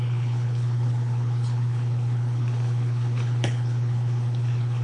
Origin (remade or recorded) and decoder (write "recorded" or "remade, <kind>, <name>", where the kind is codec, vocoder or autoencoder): remade, codec, HILCodec